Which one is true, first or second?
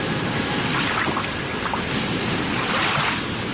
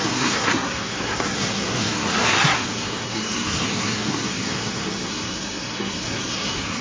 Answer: first